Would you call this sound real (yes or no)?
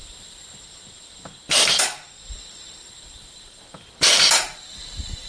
no